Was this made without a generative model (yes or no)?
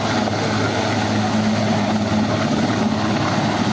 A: yes